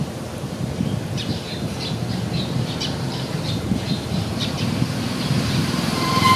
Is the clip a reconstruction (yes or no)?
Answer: yes